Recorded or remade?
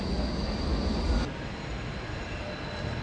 recorded